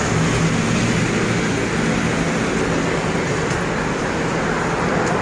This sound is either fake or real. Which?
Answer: real